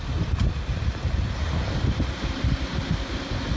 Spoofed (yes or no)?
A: no